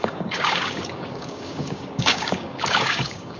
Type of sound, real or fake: fake